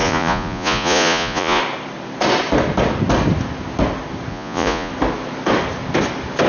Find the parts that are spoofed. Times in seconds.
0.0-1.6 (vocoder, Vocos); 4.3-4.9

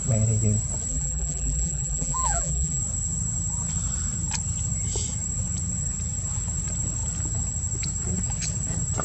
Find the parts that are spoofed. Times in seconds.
0.9-2.8 (vocoder, BigVGAN v2)